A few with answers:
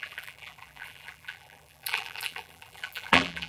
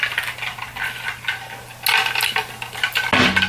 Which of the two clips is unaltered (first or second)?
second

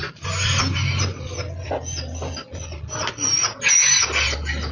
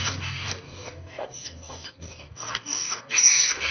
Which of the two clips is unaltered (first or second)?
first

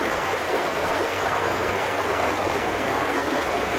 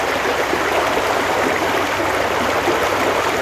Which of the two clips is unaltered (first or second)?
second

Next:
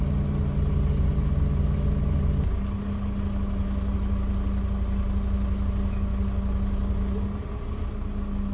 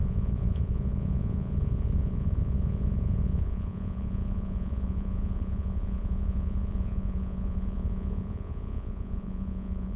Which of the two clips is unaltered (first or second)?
first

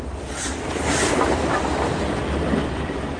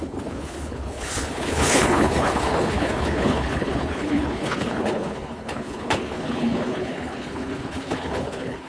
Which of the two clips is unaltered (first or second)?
first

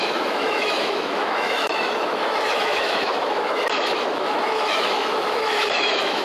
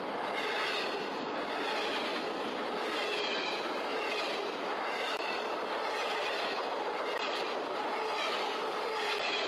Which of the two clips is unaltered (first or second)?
second